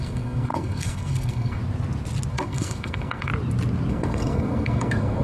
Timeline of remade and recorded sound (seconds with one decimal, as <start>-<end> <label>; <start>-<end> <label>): 0.0-1.6 remade; 1.6-2.3 recorded; 2.3-3.3 remade; 3.3-3.9 recorded; 3.9-5.2 remade